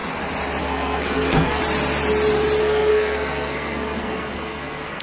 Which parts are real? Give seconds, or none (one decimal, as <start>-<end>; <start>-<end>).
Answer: 0.0-0.6; 1.6-2.6